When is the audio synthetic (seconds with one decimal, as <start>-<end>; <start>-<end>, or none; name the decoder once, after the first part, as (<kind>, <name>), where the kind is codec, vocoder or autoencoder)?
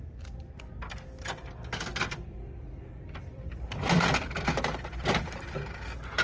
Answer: 1.9-5.6 (vocoder, BigVGAN v2)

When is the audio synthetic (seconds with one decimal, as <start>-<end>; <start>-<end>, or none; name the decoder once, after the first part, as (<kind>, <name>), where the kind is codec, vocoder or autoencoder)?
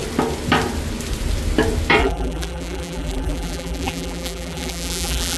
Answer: 2.0-5.4 (vocoder, BigVGAN v2)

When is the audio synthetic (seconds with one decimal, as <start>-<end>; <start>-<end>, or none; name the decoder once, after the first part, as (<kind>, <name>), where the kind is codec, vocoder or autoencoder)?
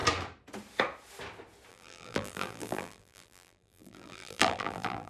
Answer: 1.7-5.1 (vocoder, BigVGAN v2)